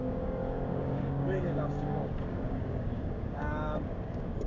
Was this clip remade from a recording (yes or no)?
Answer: yes